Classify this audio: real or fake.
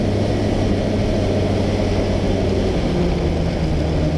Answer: real